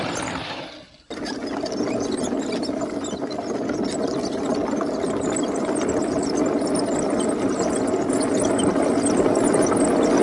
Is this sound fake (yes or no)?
no